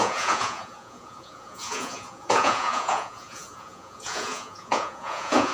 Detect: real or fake fake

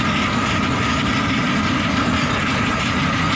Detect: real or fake real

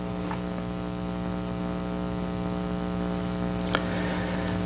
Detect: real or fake real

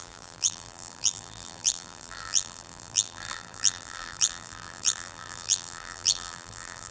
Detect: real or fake fake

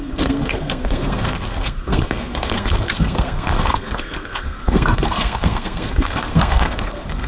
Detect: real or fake fake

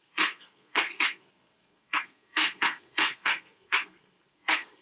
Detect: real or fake fake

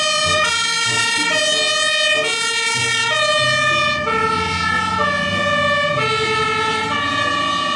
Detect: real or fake real